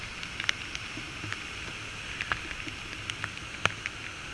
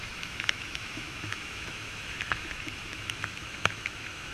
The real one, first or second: first